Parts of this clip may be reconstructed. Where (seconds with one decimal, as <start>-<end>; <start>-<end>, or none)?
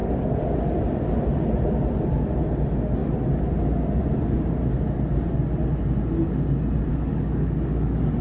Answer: 6.9-8.2